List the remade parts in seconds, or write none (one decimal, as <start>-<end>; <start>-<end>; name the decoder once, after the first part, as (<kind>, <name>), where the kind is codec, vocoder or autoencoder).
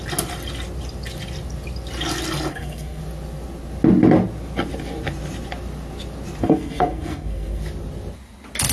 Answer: 2.5-3.0 (codec, SNAC); 6.4-7.6